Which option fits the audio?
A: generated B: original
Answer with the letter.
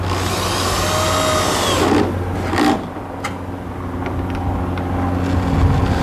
B